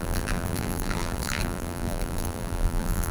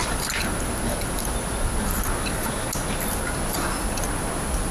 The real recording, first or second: second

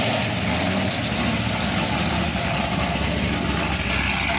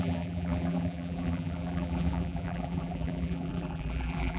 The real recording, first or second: first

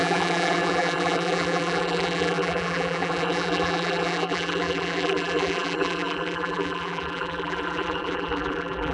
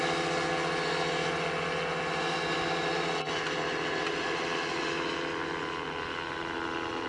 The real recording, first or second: second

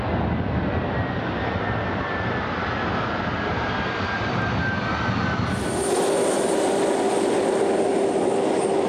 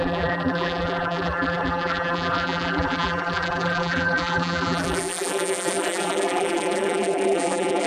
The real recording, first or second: first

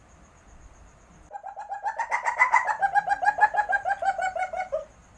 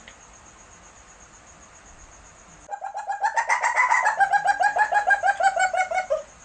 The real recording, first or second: second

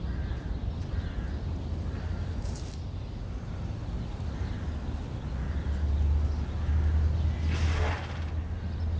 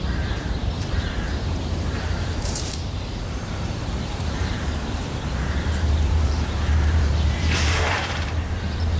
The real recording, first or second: first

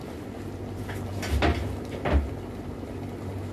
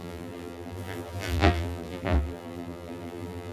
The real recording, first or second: first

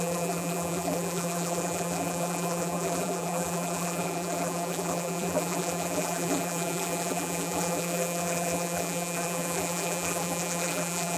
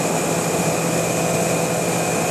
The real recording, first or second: second